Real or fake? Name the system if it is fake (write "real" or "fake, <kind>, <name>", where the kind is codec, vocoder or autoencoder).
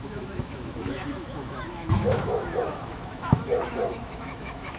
fake, autoencoder, DAC-VAE